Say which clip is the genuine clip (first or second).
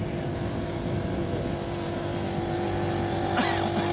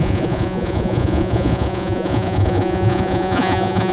first